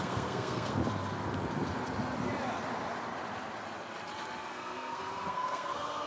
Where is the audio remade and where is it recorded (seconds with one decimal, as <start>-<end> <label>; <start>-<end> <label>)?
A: 0.0-0.8 remade; 0.8-4.5 recorded; 4.5-6.1 remade